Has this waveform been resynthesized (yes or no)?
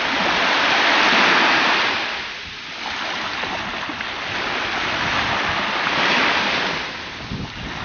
no